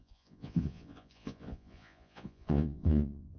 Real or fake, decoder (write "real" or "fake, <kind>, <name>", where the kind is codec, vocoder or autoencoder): fake, vocoder, Vocos